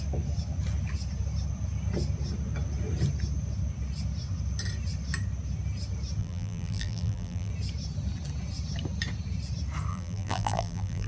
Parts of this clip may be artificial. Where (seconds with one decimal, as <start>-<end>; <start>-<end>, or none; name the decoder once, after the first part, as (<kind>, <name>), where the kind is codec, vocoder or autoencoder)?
6.2-7.5 (vocoder, BigVGAN v2); 9.9-11.1